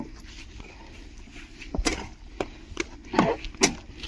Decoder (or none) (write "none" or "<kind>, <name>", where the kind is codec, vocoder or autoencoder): none